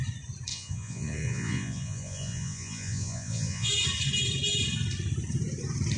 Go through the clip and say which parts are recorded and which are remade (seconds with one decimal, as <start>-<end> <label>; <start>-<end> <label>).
0.0-0.5 recorded; 0.5-3.7 remade; 3.7-6.0 recorded